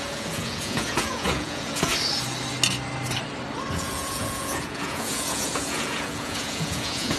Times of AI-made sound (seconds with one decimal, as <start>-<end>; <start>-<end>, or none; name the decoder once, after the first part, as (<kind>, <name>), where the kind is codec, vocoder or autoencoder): 0.0-1.9 (vocoder, Vocos); 3.7-7.2